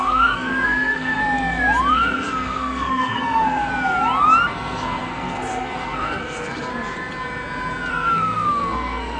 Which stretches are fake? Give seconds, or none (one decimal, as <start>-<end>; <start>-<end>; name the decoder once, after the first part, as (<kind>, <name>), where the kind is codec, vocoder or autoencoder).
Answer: 0.0-1.2 (codec, SNAC); 1.9-3.7; 4.5-6.7; 7.9-9.2